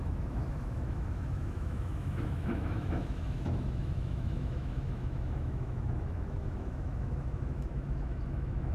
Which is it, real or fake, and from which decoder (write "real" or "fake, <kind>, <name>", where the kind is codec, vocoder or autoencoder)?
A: fake, autoencoder, DAC-VAE